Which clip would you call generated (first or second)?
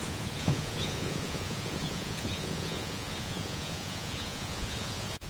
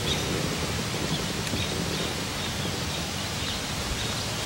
first